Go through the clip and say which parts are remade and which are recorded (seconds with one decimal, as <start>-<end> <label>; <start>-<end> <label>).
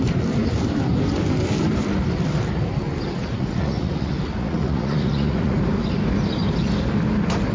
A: 0.0-3.2 recorded; 3.2-5.6 remade; 5.6-7.5 recorded